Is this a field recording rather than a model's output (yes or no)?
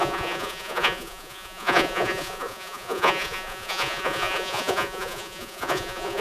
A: no